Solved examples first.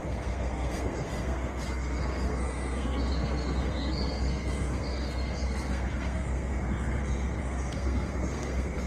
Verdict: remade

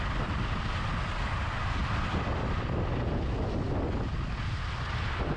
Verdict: recorded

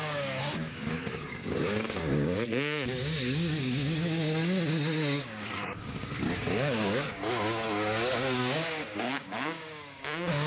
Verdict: remade